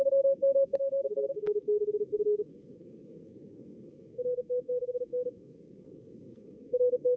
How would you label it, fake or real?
fake